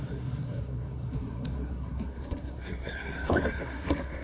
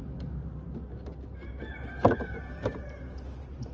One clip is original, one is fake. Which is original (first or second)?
second